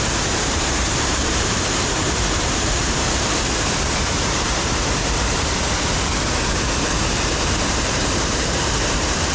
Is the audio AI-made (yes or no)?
yes